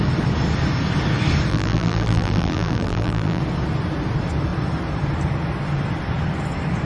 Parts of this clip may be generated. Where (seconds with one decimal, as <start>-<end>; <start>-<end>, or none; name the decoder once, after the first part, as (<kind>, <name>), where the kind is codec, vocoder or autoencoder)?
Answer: 1.5-3.4 (vocoder, BigVGAN v2)